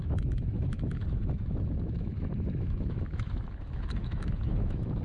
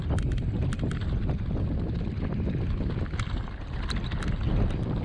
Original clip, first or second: second